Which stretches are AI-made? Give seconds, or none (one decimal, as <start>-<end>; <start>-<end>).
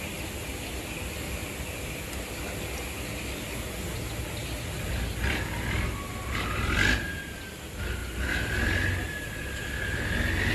none